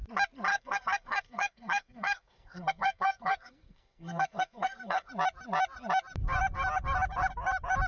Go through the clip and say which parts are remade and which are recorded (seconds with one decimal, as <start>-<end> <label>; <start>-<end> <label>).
0.0-0.5 recorded; 0.5-5.1 remade; 5.1-7.9 recorded